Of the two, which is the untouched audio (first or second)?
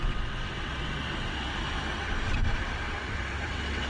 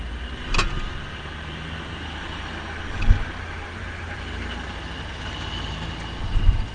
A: second